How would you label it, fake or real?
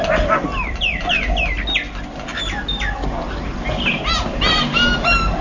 real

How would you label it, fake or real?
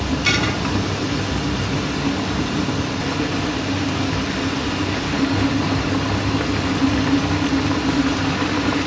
real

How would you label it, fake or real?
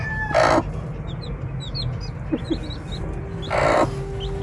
real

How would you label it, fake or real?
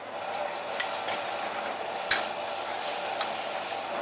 real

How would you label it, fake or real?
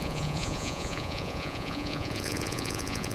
fake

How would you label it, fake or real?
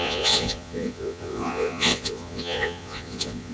fake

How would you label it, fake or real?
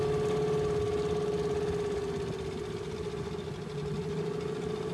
real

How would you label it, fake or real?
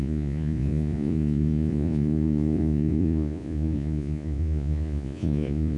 fake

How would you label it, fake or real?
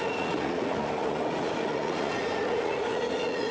fake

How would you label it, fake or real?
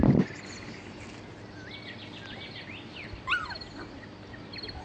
real